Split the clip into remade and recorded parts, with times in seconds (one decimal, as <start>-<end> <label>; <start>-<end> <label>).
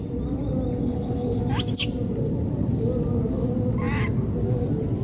0.0-0.8 recorded; 0.8-1.4 remade; 1.4-5.0 recorded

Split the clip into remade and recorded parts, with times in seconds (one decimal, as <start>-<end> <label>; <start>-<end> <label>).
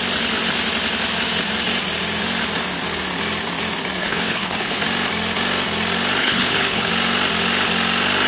0.0-4.0 recorded; 4.0-4.8 remade; 4.8-6.2 recorded; 6.2-6.9 remade; 6.9-8.3 recorded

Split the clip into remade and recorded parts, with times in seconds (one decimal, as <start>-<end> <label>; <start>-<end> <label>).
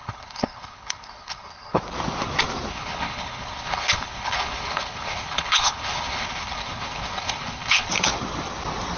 0.0-1.8 remade; 1.8-2.7 recorded; 2.7-7.9 remade; 7.9-9.0 recorded